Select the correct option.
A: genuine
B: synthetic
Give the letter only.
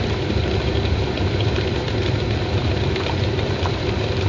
A